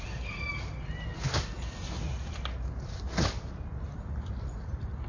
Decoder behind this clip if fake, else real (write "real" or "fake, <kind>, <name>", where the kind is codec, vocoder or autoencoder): real